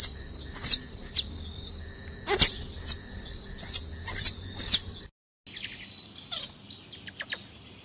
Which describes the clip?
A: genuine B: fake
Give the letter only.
A